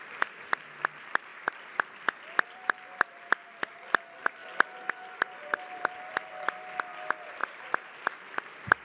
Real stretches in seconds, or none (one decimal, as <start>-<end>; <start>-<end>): 0.0-8.8

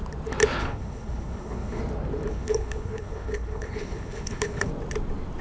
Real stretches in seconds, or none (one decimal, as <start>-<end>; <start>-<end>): 0.0-0.6; 1.8-2.3; 4.7-5.4